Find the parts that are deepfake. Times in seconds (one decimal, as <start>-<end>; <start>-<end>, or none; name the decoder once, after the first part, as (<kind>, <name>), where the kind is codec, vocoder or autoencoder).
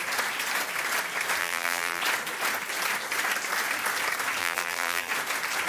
1.4-2.0 (vocoder, BigVGAN v2); 4.4-5.1